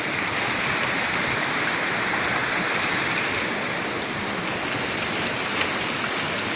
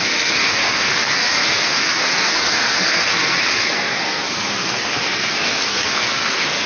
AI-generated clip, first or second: second